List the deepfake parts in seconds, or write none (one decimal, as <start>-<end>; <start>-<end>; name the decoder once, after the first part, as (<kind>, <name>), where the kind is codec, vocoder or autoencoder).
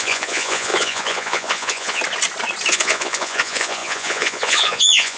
0.0-2.0 (vocoder, Vocos); 2.7-5.2